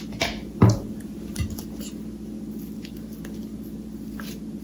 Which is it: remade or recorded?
recorded